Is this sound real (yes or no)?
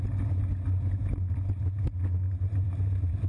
yes